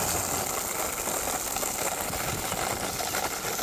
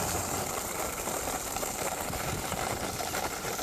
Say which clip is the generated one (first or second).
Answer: second